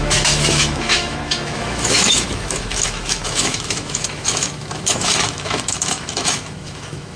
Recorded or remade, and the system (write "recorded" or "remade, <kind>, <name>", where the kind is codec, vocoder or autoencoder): remade, autoencoder, DAC-VAE